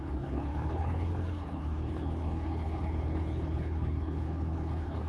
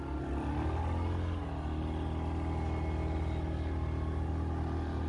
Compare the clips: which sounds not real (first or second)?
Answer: first